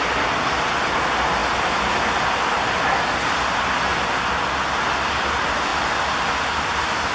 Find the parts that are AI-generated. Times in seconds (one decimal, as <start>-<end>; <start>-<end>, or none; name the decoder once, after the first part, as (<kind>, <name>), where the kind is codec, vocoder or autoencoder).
none